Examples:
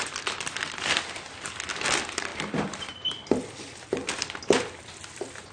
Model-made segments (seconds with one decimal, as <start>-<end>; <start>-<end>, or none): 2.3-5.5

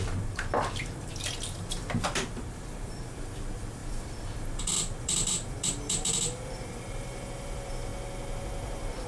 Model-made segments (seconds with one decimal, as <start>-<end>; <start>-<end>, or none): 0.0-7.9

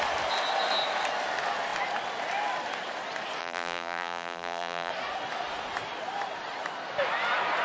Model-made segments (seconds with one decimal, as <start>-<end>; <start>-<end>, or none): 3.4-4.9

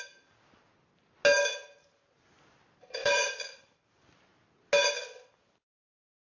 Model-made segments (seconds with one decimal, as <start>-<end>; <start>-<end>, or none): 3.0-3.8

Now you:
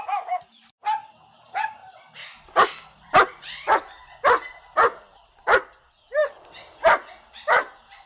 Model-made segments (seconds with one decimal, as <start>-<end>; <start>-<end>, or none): 1.8-3.1

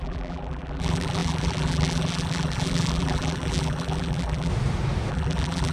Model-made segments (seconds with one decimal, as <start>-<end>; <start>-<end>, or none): 0.0-4.5; 5.1-5.7

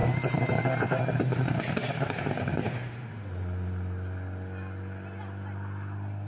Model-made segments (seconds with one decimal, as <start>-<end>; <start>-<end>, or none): 0.0-1.0; 1.8-3.2

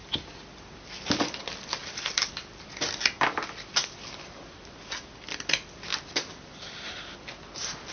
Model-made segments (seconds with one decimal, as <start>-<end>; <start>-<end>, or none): 1.8-2.3; 5.9-6.9